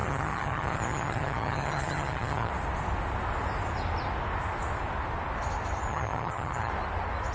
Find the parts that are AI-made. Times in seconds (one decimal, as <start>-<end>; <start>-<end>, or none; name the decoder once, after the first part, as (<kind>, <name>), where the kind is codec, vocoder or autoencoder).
0.0-2.5 (vocoder, HiFi-GAN); 5.9-6.7